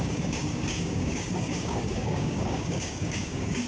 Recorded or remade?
remade